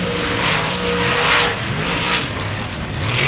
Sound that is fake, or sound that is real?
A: real